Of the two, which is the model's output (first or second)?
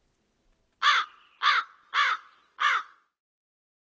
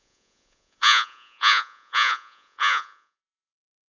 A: second